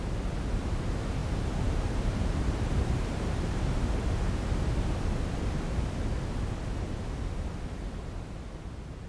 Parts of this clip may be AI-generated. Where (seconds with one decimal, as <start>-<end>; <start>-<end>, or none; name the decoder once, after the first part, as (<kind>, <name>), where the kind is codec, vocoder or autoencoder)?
1.2-3.7 (vocoder, BigVGAN v2)